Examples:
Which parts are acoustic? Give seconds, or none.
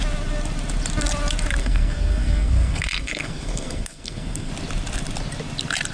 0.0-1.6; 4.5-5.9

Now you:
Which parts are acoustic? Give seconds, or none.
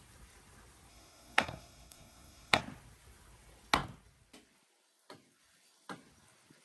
0.0-0.9; 2.6-6.6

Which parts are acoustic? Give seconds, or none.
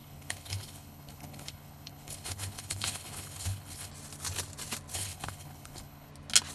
3.9-4.9; 6.1-6.5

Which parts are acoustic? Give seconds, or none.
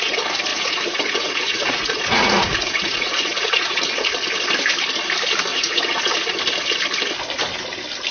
0.0-0.5; 4.1-5.5; 6.1-8.1